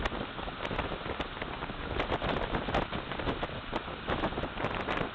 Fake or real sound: real